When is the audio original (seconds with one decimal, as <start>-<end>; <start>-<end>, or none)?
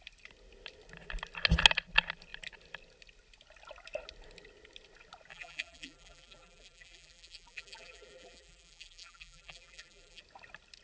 0.0-5.3; 10.2-10.8